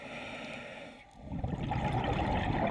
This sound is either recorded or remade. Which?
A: recorded